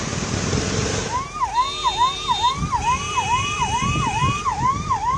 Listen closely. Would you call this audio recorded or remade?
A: recorded